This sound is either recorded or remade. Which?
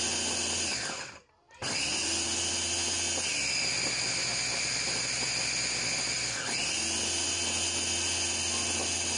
recorded